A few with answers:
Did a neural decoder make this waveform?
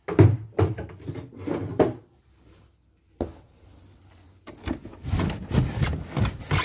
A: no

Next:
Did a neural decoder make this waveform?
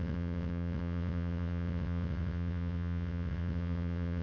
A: yes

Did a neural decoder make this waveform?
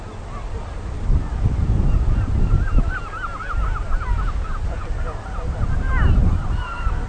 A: no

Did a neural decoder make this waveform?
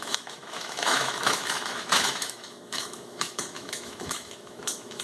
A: yes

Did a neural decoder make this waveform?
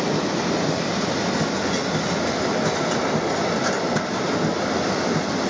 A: no